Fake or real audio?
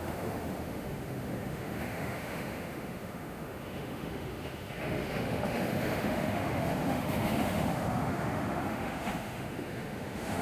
fake